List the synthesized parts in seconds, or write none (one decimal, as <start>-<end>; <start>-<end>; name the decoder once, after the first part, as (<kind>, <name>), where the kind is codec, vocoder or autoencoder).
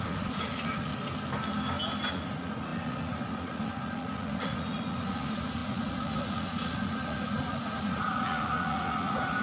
0.0-0.9 (vocoder, Vocos); 2.1-9.4